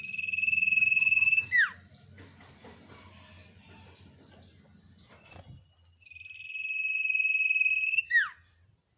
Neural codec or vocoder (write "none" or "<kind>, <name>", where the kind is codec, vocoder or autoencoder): none